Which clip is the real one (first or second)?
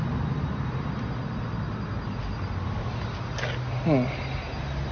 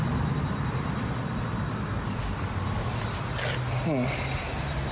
first